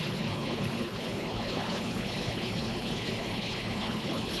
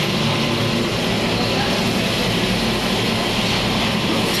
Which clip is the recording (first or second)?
second